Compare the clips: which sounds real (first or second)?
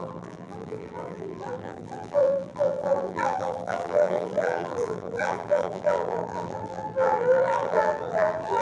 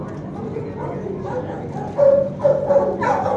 second